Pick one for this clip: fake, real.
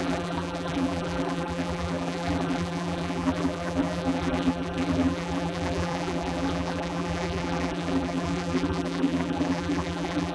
fake